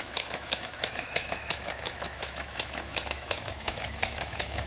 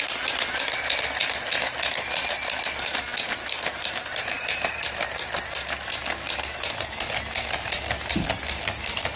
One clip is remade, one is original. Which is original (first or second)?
second